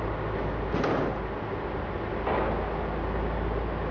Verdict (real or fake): real